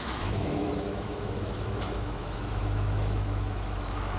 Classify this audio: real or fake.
fake